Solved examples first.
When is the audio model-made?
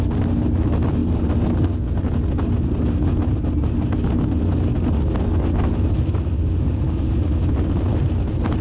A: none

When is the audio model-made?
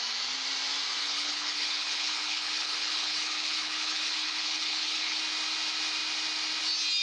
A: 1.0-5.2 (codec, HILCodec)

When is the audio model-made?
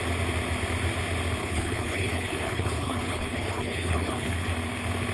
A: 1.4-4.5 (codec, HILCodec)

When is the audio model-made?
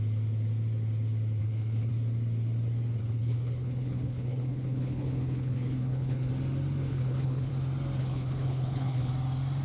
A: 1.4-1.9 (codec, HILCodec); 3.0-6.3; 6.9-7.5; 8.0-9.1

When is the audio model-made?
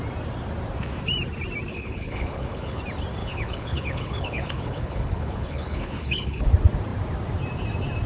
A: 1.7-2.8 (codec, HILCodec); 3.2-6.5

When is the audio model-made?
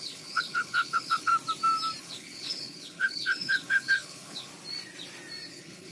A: 0.0-1.3 (codec, HILCodec); 2.0-4.5; 5.5-5.9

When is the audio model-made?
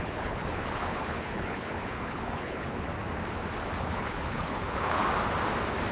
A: 0.0-2.9 (codec, HILCodec); 3.8-5.0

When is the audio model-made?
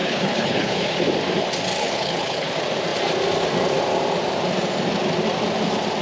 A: 0.0-1.0 (codec, HILCodec); 1.8-2.5